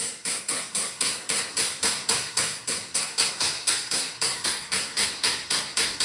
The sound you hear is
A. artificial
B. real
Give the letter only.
A